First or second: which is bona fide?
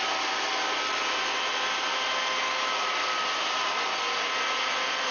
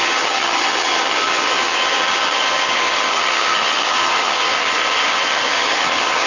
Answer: first